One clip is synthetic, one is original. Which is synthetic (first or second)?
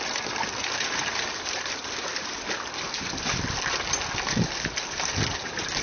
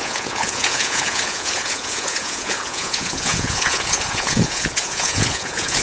second